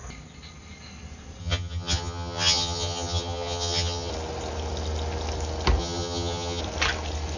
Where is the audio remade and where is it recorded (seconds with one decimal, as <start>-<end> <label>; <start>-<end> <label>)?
0.0-1.4 recorded; 1.4-4.1 remade; 4.1-5.8 recorded; 5.8-6.6 remade; 6.6-7.4 recorded